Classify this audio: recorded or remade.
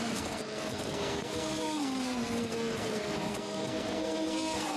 remade